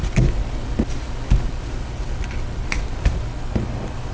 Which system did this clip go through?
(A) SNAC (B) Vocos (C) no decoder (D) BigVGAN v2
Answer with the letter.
C